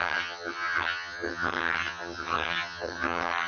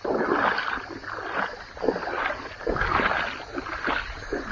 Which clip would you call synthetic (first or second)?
first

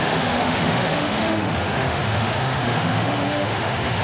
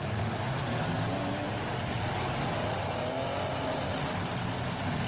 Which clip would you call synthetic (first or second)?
first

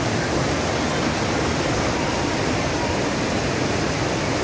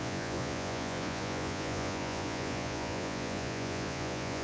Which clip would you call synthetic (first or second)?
second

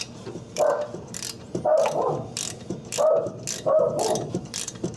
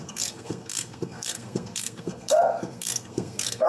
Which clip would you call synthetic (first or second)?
second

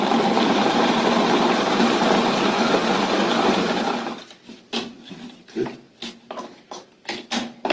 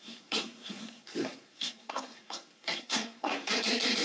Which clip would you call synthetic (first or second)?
second